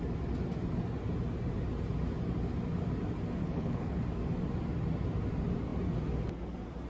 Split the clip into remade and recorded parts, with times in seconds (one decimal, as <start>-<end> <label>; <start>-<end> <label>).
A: 0.0-3.4 recorded; 3.4-4.0 remade; 4.0-6.9 recorded